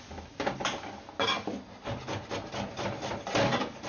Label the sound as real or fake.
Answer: real